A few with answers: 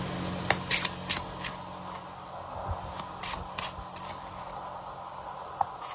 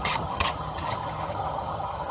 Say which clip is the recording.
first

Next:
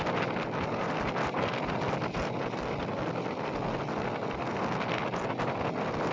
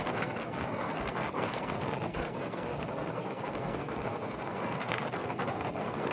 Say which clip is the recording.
first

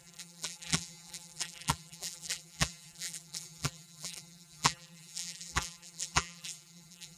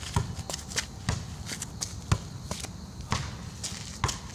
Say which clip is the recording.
second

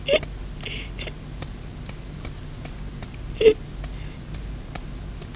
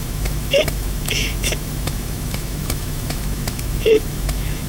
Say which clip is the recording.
first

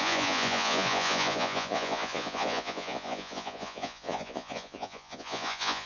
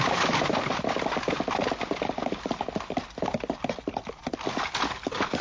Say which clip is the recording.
second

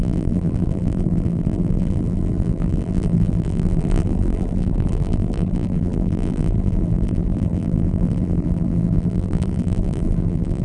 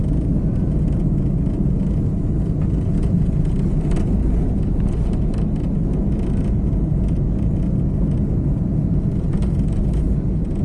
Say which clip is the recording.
second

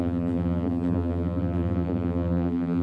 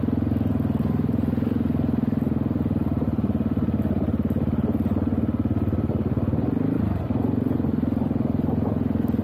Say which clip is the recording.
second